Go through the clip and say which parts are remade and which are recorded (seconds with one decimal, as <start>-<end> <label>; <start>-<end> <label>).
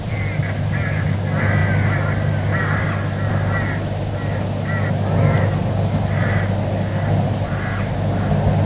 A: 0.0-8.7 recorded